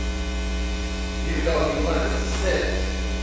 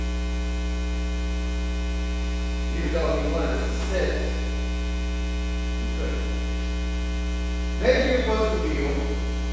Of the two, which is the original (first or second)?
second